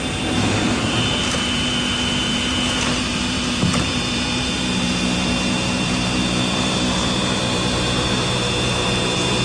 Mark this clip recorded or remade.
remade